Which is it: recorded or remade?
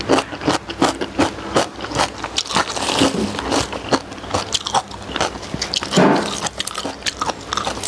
recorded